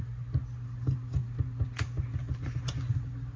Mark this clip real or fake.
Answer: real